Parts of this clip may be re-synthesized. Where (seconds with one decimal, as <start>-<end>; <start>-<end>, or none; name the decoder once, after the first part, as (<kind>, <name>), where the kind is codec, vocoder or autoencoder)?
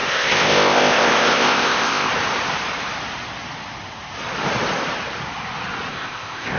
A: 0.0-2.1 (codec, ZipCodec); 5.9-6.6